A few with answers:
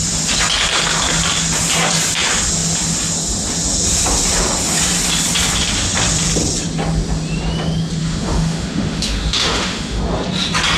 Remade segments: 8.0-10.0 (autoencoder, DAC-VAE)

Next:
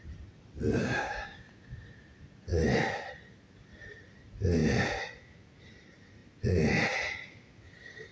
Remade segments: 0.8-1.5 (codec, DAC)

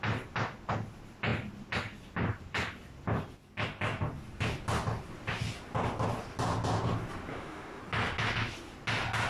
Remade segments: 7.3-7.8 (autoencoder, DAC-VAE)

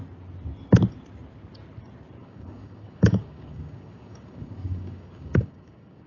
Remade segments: 2.2-6.1 (codec, DAC)

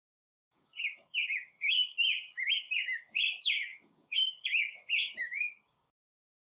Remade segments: 0.0-6.4 (codec, DAC)

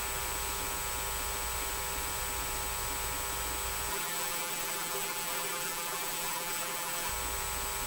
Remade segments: 3.9-7.1 (vocoder, BigVGAN v2)

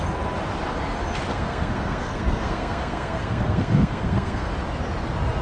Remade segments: 1.3-4.5 (codec, SNAC)